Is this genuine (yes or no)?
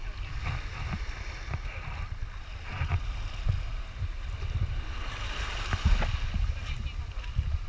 yes